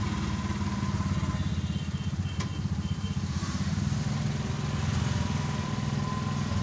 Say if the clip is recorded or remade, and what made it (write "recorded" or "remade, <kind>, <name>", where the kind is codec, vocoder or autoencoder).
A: recorded